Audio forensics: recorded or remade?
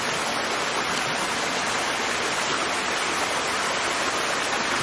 recorded